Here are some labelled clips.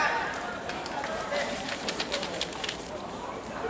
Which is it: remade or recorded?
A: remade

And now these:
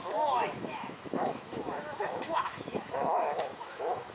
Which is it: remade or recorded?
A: remade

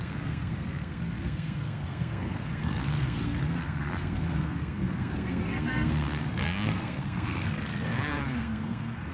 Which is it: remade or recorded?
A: remade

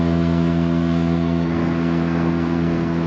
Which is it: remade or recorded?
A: remade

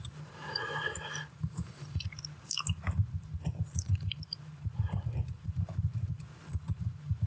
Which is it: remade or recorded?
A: remade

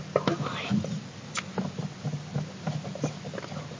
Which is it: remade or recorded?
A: recorded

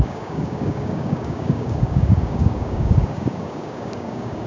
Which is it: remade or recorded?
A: remade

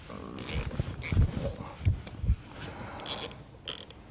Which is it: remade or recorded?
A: recorded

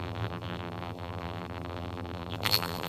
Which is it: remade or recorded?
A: remade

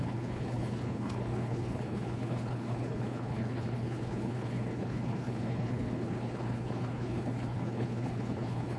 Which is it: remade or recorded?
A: remade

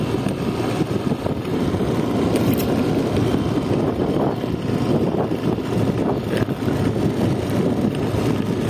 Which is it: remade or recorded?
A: recorded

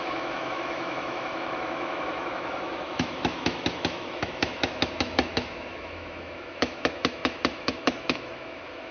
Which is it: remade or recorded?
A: remade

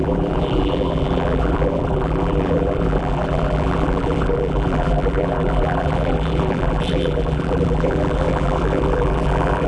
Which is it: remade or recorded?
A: remade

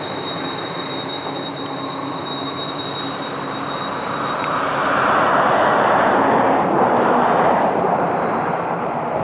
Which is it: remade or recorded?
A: remade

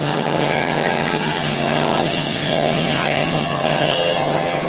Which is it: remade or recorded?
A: remade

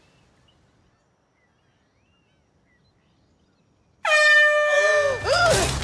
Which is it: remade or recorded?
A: recorded